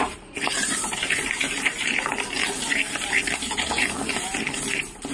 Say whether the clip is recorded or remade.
remade